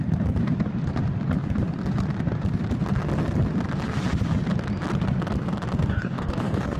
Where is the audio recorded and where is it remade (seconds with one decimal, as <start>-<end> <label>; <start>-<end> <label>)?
0.0-5.8 recorded; 5.8-6.8 remade